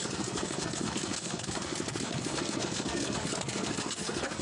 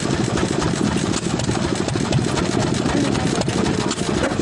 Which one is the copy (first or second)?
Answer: first